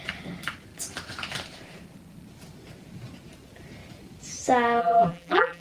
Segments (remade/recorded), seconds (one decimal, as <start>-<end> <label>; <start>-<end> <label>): 0.0-4.8 recorded; 4.8-5.6 remade